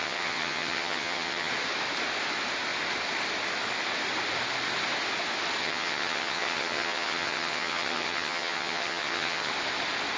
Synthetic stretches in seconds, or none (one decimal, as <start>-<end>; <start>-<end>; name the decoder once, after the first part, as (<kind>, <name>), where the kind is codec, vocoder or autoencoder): 0.0-1.5 (vocoder, HiFi-GAN); 5.6-9.5